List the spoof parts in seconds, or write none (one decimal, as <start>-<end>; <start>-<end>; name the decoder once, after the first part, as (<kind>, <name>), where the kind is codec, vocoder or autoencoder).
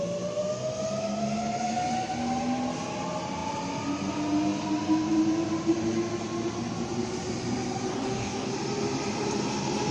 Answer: 7.9-8.5 (codec, DAC)